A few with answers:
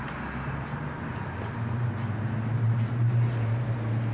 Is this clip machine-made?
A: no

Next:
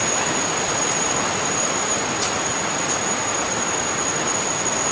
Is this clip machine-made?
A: no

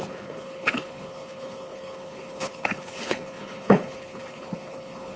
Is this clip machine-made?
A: yes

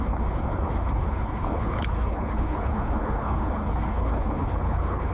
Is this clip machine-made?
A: yes